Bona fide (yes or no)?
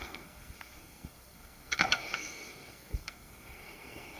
no